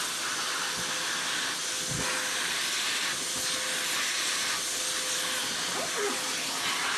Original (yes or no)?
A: yes